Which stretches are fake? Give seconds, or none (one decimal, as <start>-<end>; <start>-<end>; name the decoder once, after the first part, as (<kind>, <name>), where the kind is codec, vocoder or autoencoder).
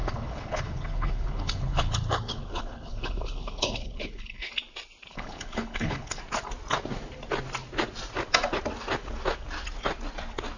0.0-4.5 (codec, HILCodec); 5.1-6.2